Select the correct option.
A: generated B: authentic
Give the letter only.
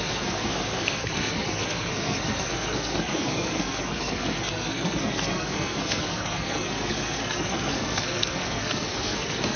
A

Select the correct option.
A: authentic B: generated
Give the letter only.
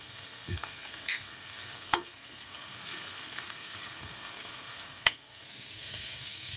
B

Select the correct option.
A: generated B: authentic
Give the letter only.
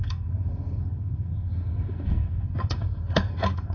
A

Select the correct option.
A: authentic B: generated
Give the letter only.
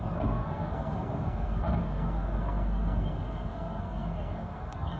B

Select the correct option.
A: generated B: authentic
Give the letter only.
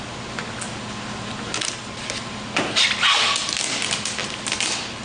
B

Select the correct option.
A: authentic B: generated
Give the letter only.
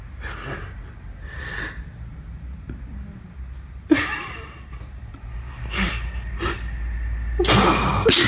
A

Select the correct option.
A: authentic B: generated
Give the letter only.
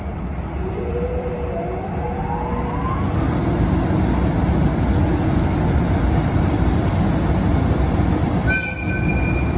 A